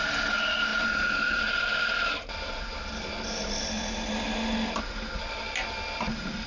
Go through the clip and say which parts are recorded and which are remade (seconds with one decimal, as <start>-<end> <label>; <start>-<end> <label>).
0.0-6.5 recorded